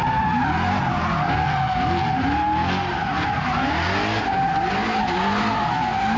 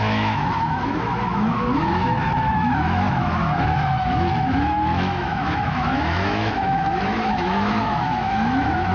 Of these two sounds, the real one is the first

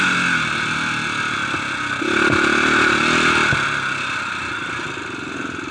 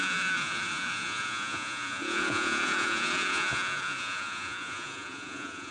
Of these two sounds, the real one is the first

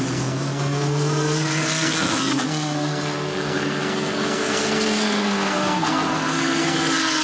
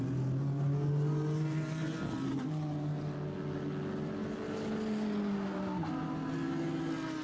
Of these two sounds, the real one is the second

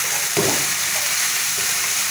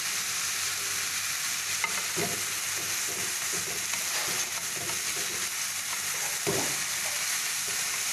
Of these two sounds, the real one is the second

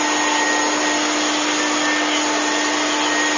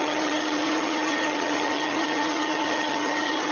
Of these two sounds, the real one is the first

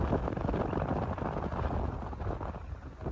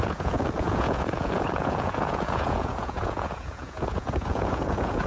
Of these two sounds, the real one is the first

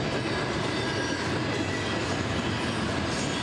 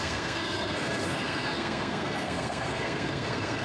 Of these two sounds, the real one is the first